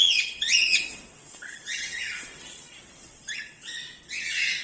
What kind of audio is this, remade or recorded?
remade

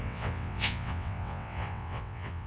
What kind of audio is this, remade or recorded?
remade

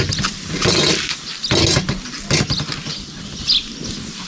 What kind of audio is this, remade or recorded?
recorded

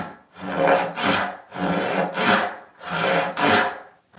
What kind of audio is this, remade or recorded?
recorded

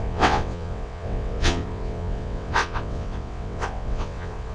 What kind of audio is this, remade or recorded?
remade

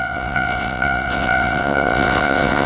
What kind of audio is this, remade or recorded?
remade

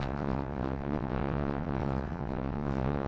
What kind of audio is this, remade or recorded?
remade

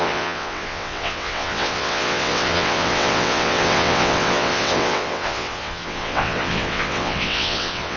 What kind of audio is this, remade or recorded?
remade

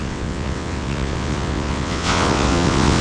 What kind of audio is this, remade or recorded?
remade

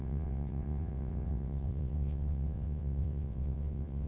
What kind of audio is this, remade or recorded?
remade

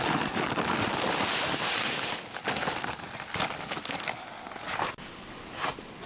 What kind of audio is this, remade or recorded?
recorded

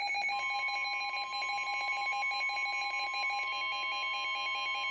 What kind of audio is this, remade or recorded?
recorded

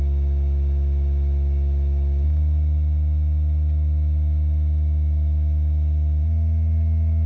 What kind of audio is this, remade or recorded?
recorded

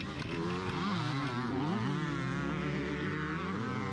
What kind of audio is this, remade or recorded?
recorded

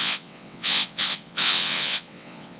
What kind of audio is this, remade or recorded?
remade